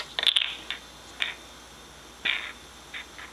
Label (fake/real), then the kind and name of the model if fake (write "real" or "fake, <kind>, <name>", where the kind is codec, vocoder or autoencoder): real